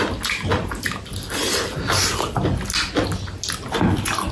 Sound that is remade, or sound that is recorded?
recorded